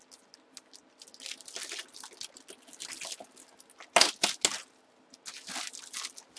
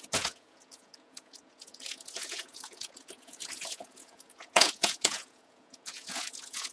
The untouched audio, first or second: first